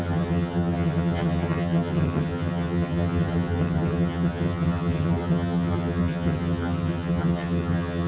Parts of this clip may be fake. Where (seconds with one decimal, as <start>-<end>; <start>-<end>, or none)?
0.0-8.1